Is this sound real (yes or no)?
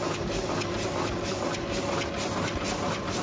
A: yes